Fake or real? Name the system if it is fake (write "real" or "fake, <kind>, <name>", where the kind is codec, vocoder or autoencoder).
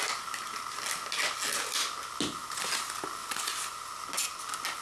real